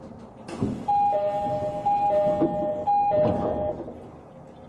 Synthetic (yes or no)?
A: no